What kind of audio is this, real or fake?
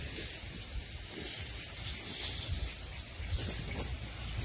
real